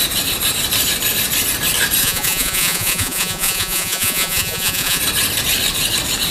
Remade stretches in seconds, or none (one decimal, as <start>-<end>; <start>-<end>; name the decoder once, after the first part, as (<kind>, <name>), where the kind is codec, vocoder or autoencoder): 2.0-5.0 (vocoder, Vocos)

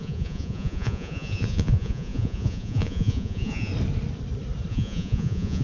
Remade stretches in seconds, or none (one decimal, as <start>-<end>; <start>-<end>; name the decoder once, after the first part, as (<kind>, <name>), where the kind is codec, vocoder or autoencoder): 0.0-3.7 (vocoder, Vocos); 4.7-5.6

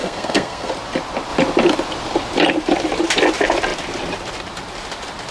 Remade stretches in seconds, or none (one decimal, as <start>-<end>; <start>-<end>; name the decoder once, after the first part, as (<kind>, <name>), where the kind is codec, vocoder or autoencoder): 0.0-0.7 (codec, SNAC)

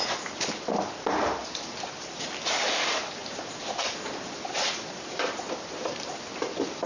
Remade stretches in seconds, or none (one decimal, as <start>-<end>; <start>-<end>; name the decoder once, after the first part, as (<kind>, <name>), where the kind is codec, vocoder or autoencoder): 1.4-2.1 (vocoder, BigVGAN v2); 3.2-6.1

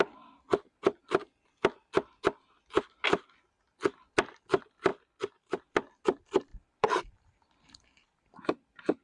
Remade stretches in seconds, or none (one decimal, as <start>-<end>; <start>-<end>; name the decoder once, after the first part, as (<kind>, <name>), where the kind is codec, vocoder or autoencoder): 0.0-1.8 (vocoder, BigVGAN v2); 4.4-4.9; 5.6-9.0

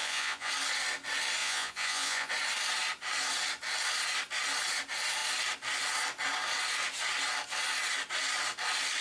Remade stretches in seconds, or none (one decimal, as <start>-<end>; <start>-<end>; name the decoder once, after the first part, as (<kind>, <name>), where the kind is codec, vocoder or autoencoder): 0.0-0.5 (vocoder, Vocos); 1.4-2.3

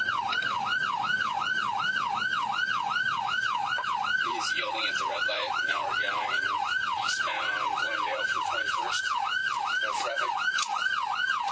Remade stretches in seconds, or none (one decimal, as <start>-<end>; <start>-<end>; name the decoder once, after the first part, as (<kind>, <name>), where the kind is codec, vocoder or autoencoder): 0.0-1.6 (vocoder, Vocos); 2.2-9.4; 10.1-11.5

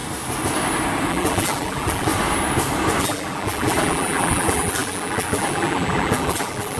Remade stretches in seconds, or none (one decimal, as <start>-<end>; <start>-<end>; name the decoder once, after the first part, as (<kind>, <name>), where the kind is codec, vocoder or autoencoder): 1.1-2.1 (vocoder, BigVGAN v2); 3.0-6.8